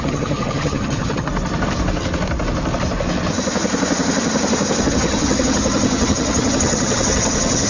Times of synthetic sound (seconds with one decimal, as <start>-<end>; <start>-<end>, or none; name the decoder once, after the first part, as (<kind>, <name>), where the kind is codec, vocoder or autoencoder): 0.0-1.3 (vocoder, HiFi-GAN); 4.8-7.7